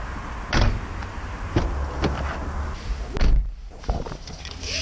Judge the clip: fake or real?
real